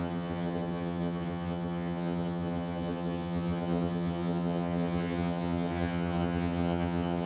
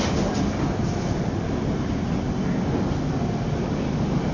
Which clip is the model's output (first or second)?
first